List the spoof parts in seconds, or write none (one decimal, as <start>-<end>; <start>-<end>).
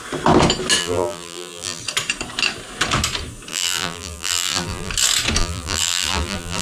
0.8-1.8; 3.5-4.9; 5.4-6.6